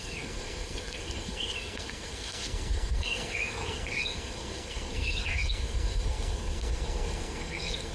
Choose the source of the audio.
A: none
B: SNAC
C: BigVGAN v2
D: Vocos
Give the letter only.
B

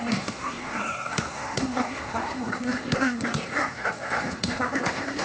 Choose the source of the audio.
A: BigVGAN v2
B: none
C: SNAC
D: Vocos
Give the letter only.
C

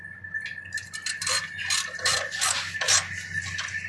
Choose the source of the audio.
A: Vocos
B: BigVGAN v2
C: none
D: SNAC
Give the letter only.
C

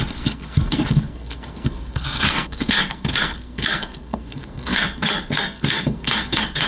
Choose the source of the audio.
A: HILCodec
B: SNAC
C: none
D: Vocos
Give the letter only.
B